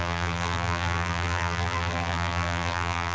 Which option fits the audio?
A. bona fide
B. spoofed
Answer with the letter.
B